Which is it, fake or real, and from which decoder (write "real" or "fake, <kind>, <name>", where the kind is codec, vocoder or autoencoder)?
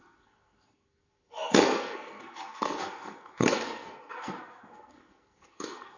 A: fake, codec, SNAC